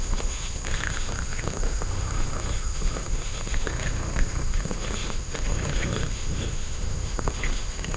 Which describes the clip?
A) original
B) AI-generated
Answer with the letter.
B